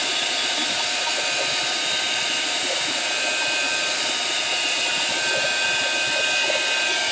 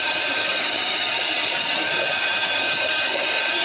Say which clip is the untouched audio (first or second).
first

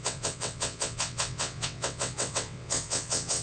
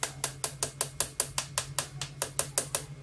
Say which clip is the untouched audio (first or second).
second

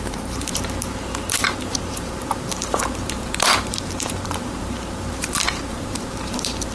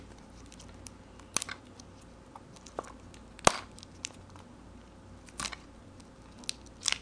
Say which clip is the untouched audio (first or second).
second